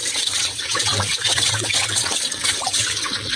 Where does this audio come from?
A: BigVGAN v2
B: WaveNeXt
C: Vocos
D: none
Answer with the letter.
B